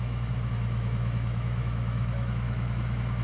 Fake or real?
fake